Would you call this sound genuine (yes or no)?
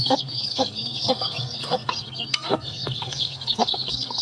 no